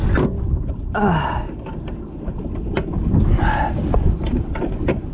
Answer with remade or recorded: recorded